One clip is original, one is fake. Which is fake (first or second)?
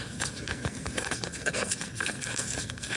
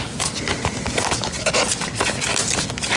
first